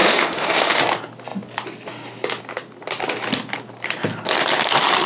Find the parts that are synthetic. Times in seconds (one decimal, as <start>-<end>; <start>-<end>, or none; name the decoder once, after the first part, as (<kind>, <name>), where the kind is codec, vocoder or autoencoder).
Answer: 0.0-0.8 (autoencoder, DAC-VAE)